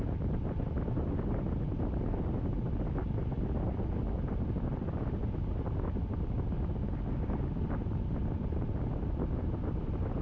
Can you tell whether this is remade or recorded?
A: recorded